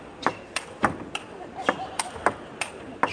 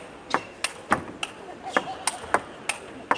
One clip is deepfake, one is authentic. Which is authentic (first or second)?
second